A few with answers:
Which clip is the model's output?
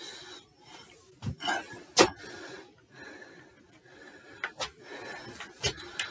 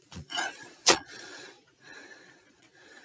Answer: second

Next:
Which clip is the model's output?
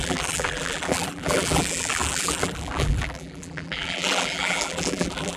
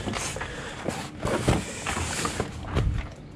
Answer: first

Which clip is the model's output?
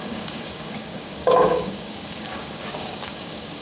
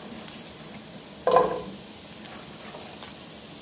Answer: first